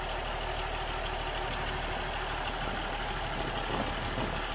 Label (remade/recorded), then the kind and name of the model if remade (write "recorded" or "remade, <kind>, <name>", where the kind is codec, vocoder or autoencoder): recorded